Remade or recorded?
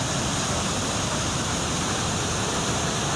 recorded